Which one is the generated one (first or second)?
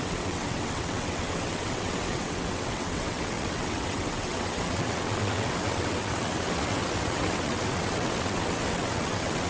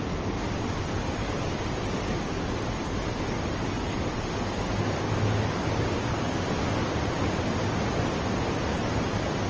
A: first